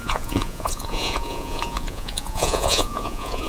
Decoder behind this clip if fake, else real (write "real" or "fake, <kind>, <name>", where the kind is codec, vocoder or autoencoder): fake, vocoder, Vocos